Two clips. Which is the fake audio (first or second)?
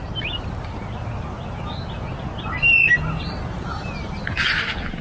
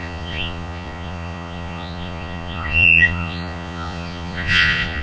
second